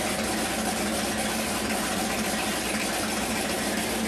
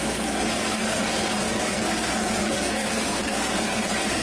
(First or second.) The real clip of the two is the first